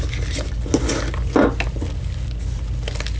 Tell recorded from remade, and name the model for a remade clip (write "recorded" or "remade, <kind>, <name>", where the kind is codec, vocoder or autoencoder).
recorded